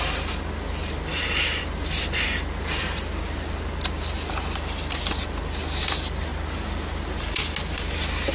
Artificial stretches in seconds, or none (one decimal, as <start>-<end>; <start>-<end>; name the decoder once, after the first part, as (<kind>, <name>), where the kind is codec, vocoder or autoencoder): none

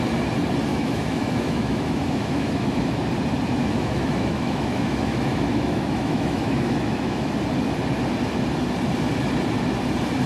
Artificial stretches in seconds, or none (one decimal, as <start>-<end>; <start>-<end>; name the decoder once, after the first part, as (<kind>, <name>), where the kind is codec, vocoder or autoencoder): 0.7-2.9 (autoencoder, DAC-VAE); 3.6-7.3

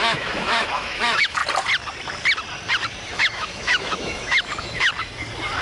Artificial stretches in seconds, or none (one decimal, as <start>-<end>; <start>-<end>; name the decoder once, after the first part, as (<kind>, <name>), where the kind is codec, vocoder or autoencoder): 0.0-1.4 (autoencoder, DAC-VAE); 3.1-4.9

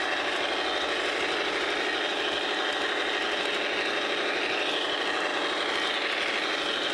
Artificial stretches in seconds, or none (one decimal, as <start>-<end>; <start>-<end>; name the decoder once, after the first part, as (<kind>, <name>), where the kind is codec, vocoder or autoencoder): none